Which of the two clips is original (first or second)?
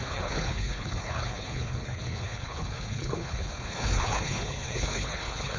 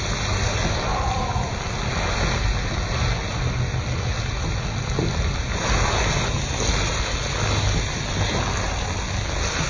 second